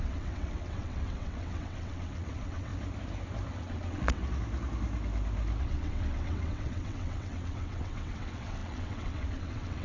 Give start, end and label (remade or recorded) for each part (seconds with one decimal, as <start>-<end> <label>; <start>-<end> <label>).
0.0-2.7 remade; 2.7-3.6 recorded; 3.6-4.2 remade; 4.2-5.6 recorded; 5.6-9.8 remade